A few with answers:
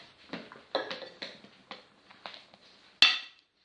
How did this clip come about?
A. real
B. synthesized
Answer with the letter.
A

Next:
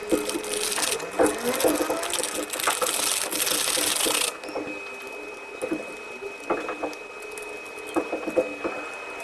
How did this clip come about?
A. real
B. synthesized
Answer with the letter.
A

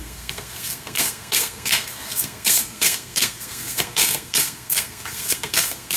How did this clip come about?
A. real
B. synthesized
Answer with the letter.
B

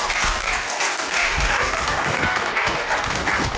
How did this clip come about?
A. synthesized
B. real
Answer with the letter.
A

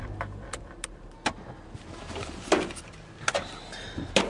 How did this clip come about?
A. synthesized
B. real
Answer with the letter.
B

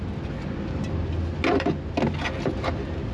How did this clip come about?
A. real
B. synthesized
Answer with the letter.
A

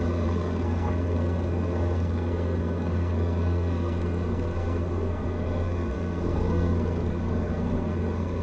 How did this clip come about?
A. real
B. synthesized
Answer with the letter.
B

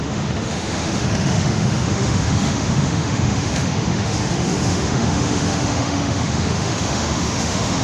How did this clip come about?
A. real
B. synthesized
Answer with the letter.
B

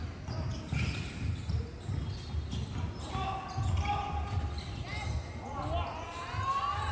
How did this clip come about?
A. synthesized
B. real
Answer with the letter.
B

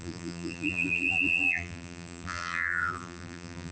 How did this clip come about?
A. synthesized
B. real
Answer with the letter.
A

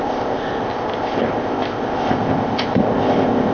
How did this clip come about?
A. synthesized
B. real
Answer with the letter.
A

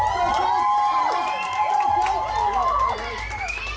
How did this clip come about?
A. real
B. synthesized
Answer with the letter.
A